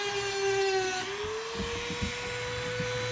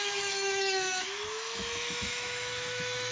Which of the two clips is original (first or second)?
first